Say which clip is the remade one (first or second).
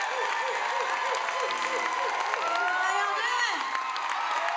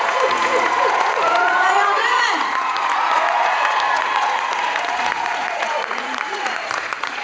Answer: second